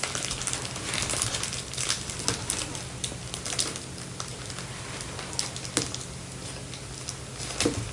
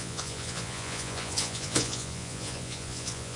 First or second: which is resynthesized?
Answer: second